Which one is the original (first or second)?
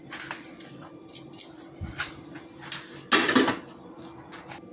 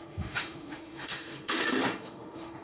first